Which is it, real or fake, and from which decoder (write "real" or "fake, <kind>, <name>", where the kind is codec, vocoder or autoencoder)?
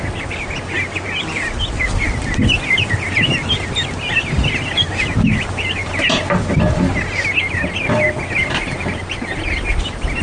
real